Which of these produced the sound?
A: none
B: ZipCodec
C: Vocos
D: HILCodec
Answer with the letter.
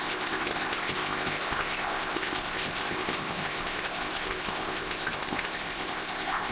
B